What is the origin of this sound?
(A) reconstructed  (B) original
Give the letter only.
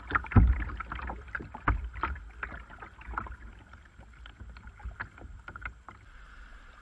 B